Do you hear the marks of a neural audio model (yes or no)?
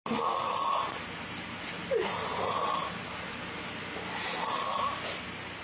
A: no